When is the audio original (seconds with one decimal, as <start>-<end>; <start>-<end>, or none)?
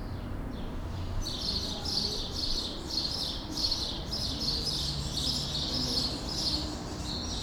4.4-7.4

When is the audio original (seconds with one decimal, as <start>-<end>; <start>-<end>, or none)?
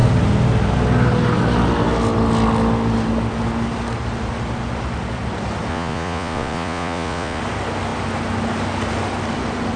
0.0-5.7; 7.4-9.8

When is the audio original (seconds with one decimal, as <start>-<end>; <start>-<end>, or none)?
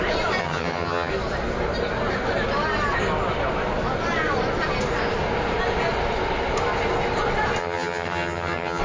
0.0-0.4; 1.1-7.6